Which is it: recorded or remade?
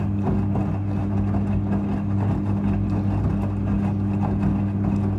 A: recorded